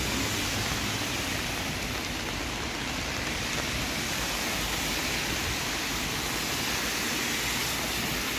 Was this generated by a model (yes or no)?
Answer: no